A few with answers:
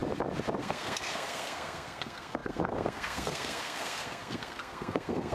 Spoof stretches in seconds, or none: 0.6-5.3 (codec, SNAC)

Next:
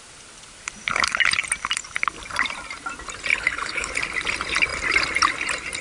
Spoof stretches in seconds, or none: 3.3-3.9 (codec, HILCodec)

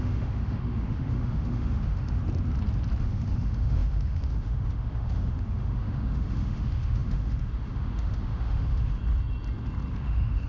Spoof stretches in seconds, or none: 0.0-2.2 (autoencoder, DAC-VAE); 3.0-9.0; 9.9-10.5

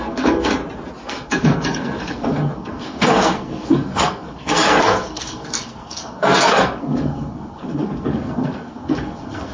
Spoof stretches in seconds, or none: 0.0-0.6 (codec, SNAC); 1.1-9.5

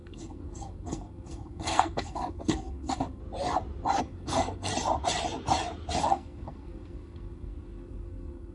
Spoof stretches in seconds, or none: 0.0-3.2 (codec, SNAC); 4.0-4.7; 6.0-8.5

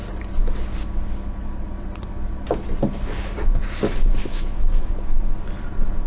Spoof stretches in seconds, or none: 4.2-4.9 (autoencoder, DAC-VAE)

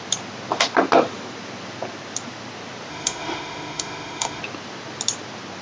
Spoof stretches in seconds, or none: 2.9-4.4 (autoencoder, DAC-VAE)

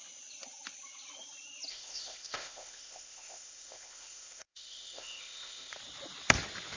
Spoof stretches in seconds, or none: 1.7-5.8 (codec, ZipCodec)